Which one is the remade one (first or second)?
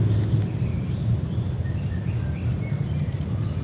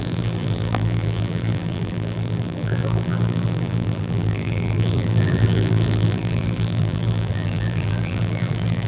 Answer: second